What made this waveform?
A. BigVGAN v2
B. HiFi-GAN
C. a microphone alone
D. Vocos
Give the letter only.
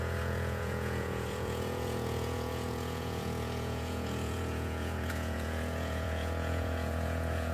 D